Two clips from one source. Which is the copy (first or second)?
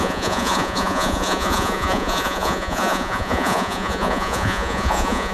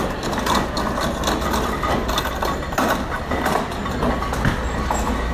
first